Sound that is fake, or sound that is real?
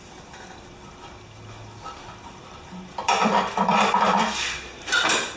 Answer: fake